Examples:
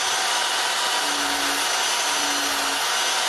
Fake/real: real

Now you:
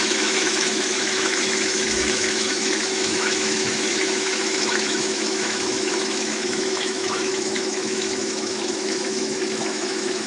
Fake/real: fake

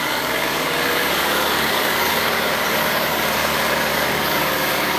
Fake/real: fake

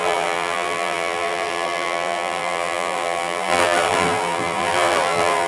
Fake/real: fake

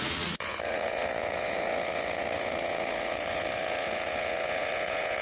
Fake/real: fake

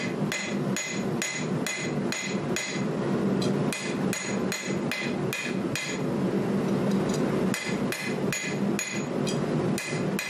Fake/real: real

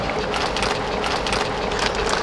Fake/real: real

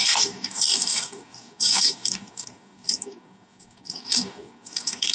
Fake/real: fake